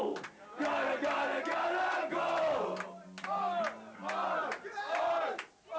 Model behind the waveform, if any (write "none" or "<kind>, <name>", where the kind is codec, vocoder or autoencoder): none